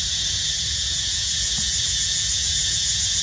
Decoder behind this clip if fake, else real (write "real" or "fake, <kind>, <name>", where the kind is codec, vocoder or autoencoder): fake, vocoder, Vocos